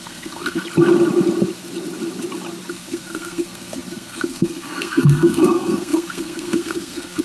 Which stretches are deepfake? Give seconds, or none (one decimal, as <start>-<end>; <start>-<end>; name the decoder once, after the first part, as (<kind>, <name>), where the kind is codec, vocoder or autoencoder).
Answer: 0.0-0.6 (codec, SNAC); 2.7-7.2